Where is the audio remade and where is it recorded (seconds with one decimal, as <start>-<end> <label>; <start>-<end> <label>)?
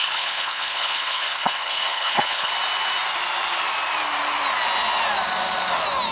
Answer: 0.0-2.5 remade; 2.5-6.1 recorded